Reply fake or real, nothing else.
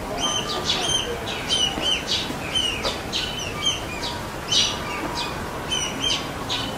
real